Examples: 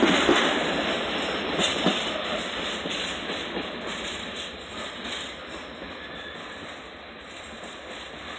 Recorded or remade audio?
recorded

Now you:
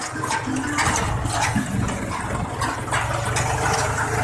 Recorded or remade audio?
recorded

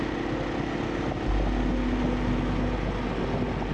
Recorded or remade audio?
recorded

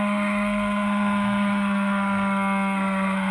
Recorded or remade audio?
remade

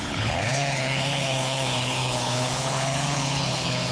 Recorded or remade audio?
remade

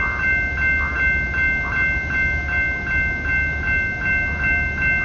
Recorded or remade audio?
recorded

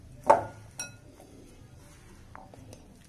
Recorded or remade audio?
recorded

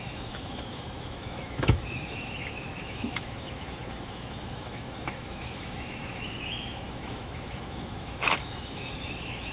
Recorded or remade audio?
remade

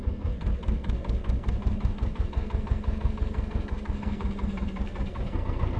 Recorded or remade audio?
remade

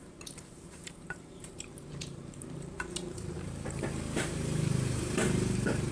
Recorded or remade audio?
remade